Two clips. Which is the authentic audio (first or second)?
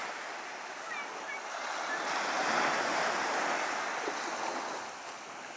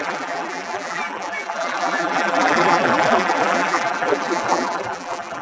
first